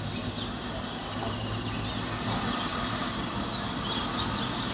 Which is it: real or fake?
real